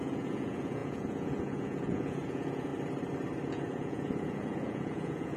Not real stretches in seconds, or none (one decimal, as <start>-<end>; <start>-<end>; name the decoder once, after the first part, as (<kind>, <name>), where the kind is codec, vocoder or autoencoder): 0.0-2.7 (vocoder, Vocos); 3.5-5.4